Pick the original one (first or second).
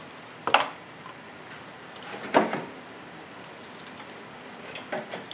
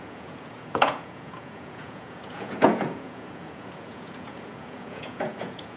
first